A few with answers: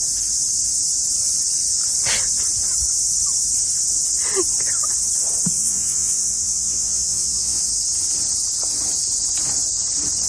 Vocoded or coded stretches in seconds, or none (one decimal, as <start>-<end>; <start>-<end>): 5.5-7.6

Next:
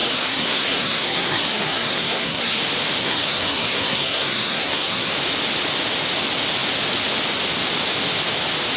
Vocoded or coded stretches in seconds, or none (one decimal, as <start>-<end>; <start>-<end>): 0.0-2.6; 3.0-5.1

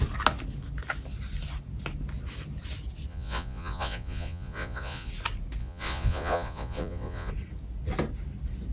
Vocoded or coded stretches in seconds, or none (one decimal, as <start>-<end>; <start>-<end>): 3.1-5.1; 5.6-7.3

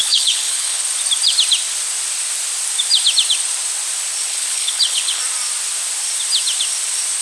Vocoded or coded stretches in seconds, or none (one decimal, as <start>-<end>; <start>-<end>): 0.0-0.8; 4.3-5.2

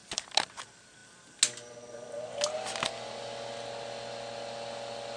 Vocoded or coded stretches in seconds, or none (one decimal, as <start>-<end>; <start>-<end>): none

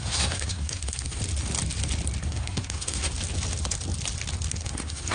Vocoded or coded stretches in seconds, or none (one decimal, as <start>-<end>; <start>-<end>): 0.0-1.2; 2.2-3.1; 4.5-5.1